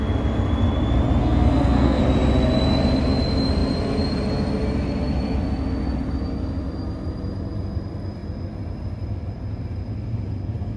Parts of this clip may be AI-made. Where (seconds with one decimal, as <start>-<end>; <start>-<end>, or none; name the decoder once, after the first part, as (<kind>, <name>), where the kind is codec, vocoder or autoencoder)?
1.2-2.0 (codec, SNAC)